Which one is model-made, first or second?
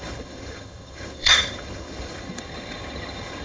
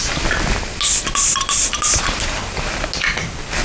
first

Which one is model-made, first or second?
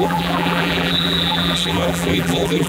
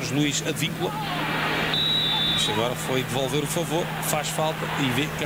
first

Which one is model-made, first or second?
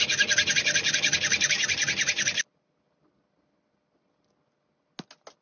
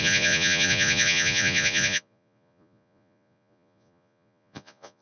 second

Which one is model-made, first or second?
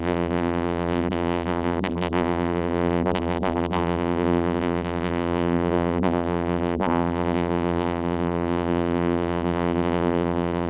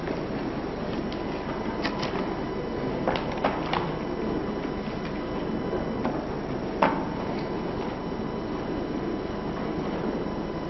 first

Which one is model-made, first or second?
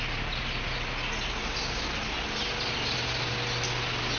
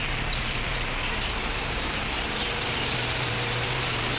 second